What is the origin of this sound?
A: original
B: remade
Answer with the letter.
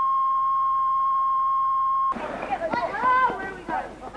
A